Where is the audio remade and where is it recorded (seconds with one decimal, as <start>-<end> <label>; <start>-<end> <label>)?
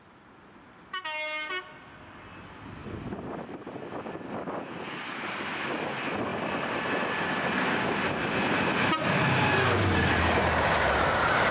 0.0-11.5 recorded